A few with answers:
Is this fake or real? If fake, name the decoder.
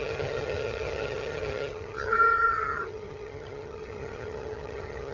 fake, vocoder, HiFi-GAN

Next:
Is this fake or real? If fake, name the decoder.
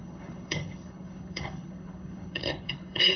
fake, codec, HILCodec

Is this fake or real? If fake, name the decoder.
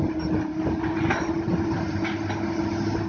real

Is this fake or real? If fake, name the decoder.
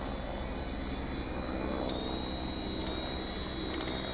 real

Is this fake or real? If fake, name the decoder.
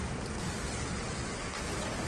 real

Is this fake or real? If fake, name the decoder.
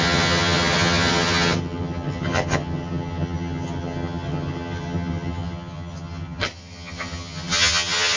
fake, vocoder, HiFi-GAN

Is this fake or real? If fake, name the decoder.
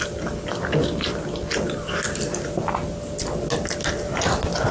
real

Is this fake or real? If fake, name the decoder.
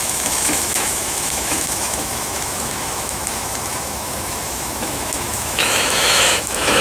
fake, autoencoder, DAC-VAE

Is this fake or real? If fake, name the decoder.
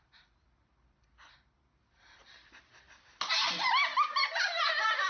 real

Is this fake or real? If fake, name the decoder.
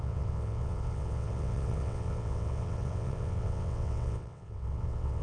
fake, vocoder, WaveNeXt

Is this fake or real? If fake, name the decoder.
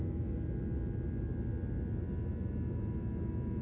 real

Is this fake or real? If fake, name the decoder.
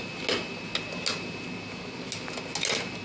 real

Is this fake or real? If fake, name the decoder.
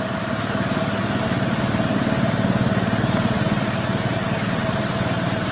real